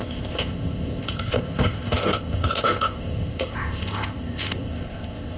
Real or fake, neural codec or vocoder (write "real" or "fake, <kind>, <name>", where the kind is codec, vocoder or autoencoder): fake, codec, ZipCodec